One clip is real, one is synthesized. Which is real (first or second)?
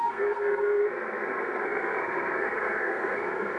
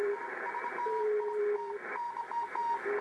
second